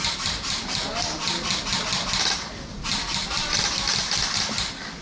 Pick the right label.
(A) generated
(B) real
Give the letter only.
B